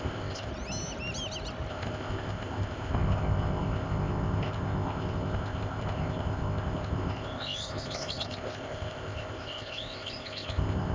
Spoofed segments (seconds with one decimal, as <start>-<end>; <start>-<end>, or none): 0.0-0.5; 1.7-10.9